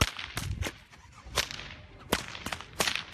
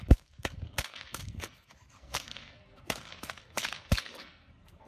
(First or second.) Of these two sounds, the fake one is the second